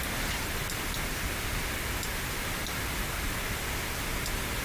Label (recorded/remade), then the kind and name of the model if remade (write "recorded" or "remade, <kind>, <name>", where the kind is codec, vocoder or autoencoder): recorded